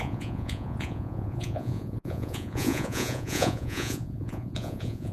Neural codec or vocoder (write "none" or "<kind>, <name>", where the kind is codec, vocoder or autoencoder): vocoder, Vocos